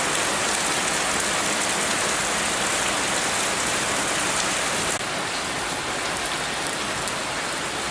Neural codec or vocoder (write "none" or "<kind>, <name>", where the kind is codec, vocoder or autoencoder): none